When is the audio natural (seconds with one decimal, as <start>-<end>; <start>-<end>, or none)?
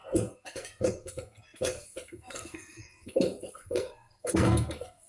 none